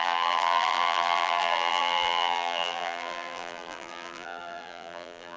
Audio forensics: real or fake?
fake